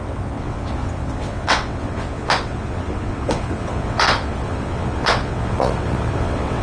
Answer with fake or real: fake